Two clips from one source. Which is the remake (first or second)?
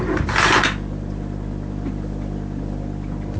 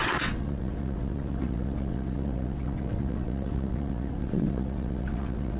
second